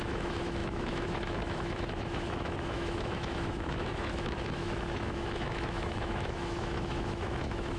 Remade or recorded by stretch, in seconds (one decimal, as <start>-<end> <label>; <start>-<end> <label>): 0.0-7.8 remade